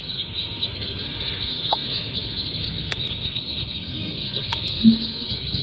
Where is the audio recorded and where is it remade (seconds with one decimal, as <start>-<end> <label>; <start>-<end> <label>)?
0.0-5.6 remade